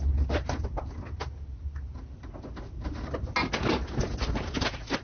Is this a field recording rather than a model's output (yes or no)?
yes